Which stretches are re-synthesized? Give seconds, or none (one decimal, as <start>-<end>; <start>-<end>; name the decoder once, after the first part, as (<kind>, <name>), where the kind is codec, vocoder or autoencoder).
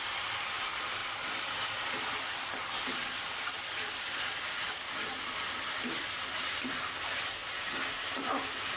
0.0-7.4 (vocoder, BigVGAN v2); 8.0-8.8